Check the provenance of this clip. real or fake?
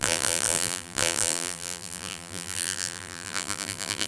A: fake